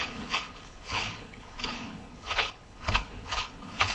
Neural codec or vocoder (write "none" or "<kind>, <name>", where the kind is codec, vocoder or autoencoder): codec, HILCodec